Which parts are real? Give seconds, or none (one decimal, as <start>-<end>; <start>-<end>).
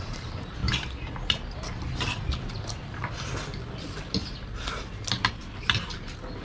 0.0-6.4